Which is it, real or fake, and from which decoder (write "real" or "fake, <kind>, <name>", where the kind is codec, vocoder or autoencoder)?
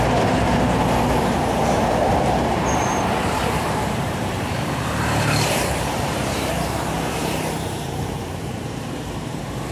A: fake, vocoder, BigVGAN v2